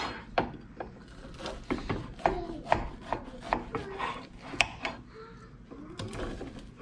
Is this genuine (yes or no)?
yes